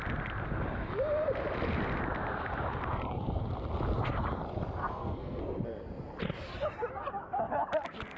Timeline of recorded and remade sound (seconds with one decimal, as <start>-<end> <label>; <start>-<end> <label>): 0.0-4.8 recorded; 4.8-5.4 remade; 5.4-8.2 recorded